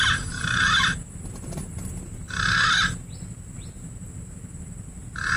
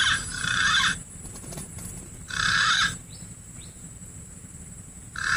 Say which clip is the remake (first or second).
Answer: second